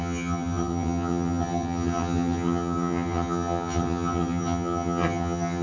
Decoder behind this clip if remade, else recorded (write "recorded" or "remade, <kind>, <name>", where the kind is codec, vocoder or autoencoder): remade, vocoder, HiFi-GAN